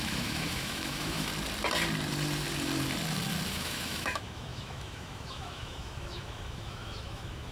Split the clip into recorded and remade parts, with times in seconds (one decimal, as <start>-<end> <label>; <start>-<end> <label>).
0.0-1.3 remade; 1.3-3.5 recorded; 3.5-7.5 remade